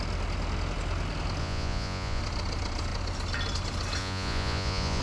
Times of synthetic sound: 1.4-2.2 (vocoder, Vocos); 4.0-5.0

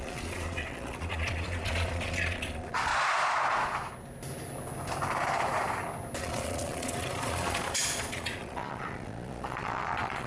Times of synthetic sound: 0.0-2.9 (vocoder, Vocos); 6.2-10.3

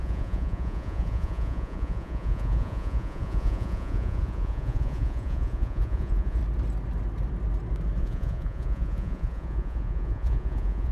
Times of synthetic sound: 0.0-6.4 (vocoder, Vocos); 8.0-10.9

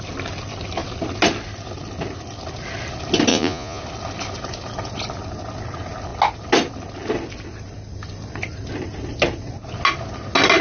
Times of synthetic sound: 3.3-3.8 (vocoder, Vocos)

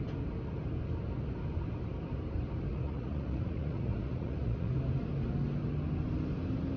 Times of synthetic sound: 2.7-4.7 (vocoder, Vocos)

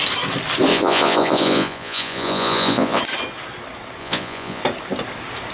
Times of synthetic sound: 0.7-3.0 (vocoder, Vocos); 4.0-4.6